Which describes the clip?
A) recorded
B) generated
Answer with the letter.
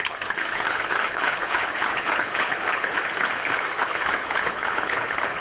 B